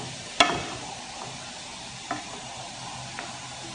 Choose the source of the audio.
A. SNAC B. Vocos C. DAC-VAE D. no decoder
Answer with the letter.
D